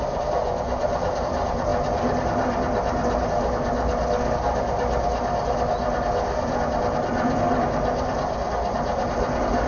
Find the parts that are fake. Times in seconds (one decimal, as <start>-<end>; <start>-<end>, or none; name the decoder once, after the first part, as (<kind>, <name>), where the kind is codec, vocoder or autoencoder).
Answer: 0.4-1.1 (vocoder, Vocos)